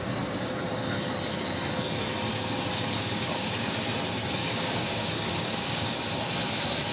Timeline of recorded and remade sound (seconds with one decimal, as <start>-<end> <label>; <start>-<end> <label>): 0.0-2.3 recorded; 2.3-3.8 remade; 3.8-4.2 recorded; 4.2-6.0 remade; 6.0-6.9 recorded

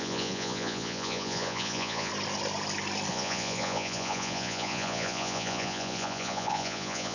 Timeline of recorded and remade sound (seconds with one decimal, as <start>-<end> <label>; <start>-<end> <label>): 0.0-2.1 remade; 2.1-3.1 recorded; 3.1-7.1 remade

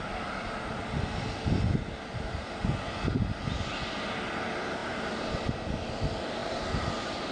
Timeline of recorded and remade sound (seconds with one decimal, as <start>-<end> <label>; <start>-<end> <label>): 0.0-4.8 recorded; 4.8-5.3 remade; 5.3-6.4 recorded; 6.4-7.3 remade

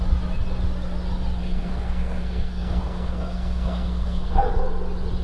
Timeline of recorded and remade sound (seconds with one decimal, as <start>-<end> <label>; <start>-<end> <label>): 0.0-1.4 recorded; 1.4-4.5 remade; 4.5-5.2 recorded

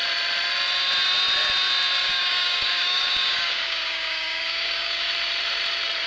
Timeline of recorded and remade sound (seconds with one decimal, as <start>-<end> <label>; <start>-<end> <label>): 0.0-2.0 recorded; 2.0-5.1 remade; 5.1-6.1 recorded